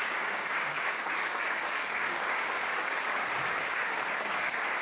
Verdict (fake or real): fake